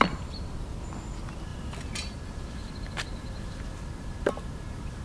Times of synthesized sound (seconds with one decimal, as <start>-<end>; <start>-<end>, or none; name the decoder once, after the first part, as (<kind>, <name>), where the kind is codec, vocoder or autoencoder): none